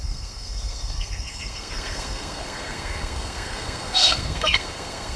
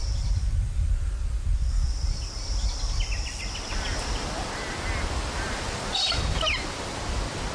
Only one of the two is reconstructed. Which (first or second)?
first